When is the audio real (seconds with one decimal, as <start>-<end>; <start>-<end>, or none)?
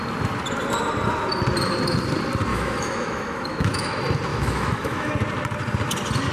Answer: 0.0-2.5; 3.9-4.3; 5.1-6.3